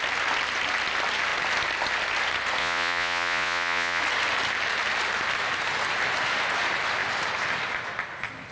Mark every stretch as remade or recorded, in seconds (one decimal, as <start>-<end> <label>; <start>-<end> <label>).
0.0-2.6 recorded; 2.6-4.0 remade; 4.0-8.5 recorded